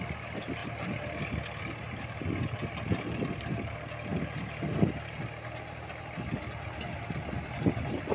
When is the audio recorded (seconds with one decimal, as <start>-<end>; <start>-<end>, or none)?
0.0-0.6; 1.2-8.1